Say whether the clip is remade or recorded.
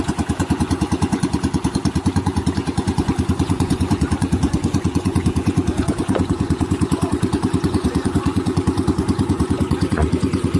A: remade